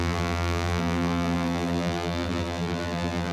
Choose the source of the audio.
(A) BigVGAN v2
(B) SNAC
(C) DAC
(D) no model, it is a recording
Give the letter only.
A